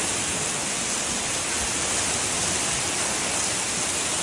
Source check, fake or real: real